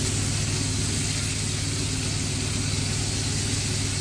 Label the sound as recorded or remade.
recorded